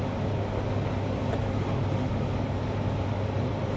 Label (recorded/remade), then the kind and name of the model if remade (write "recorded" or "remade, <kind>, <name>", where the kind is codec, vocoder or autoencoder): recorded